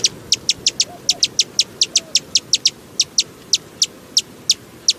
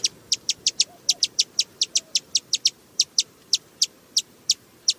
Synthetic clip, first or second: second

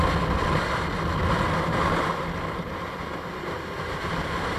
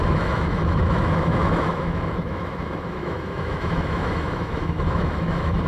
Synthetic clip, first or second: second